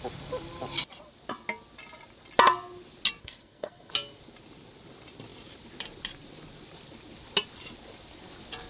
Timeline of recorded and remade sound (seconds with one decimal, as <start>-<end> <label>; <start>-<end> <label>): 0.0-3.2 recorded; 3.2-3.9 remade; 3.9-8.7 recorded